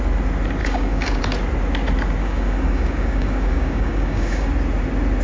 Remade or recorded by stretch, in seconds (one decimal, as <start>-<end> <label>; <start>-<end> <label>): 0.0-0.6 recorded; 0.6-1.2 remade; 1.2-2.2 recorded; 2.2-4.5 remade; 4.5-5.2 recorded